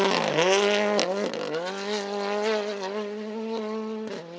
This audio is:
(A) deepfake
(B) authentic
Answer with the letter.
B